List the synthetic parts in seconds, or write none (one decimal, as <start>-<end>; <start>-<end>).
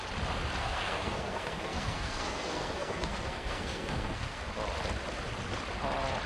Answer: 0.6-4.4